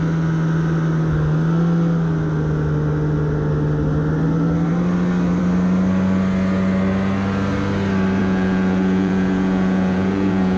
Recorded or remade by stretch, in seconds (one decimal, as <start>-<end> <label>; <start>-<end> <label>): 0.0-8.2 recorded; 8.2-10.6 remade